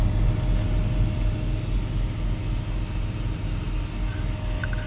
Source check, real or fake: real